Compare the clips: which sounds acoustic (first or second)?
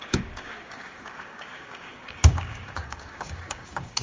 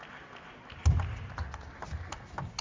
second